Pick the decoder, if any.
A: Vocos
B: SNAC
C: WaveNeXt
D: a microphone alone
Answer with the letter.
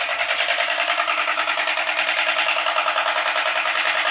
D